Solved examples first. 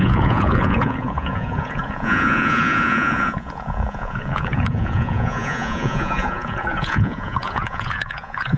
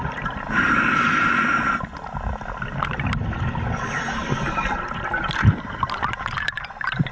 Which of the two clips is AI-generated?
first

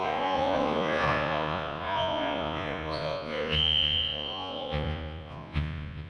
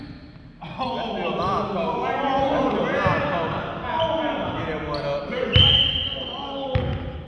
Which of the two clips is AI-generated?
first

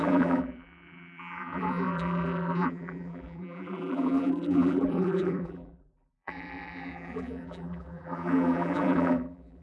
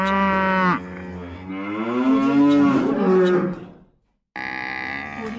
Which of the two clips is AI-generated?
first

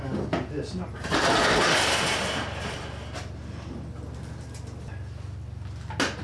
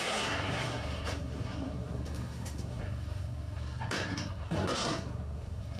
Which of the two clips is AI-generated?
second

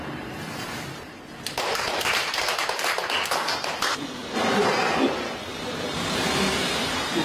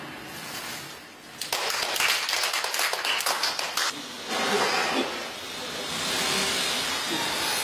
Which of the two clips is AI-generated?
first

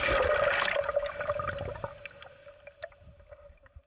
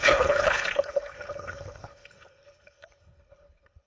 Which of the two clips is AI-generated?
second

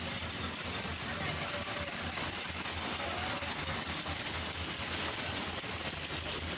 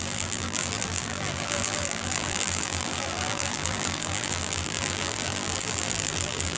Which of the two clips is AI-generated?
second